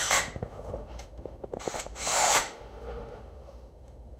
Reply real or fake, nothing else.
fake